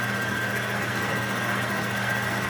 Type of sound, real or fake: fake